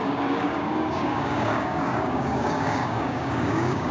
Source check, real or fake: fake